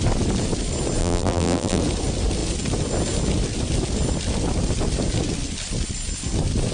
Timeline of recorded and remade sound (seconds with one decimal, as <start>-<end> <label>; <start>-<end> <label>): 0.0-1.0 recorded; 1.0-1.8 remade; 1.8-6.7 recorded